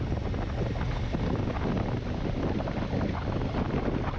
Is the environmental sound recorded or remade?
recorded